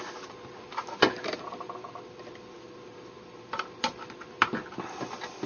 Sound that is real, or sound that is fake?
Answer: fake